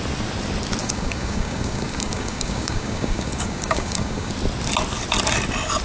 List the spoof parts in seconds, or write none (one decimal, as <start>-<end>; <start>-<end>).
0.8-4.3